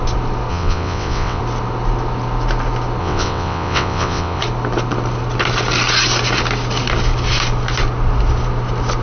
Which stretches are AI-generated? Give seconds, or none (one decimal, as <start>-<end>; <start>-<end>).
0.5-1.4; 3.0-4.4